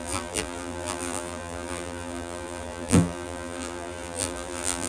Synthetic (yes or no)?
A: yes